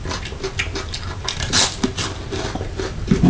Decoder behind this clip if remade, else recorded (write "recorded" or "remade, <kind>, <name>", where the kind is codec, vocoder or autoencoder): recorded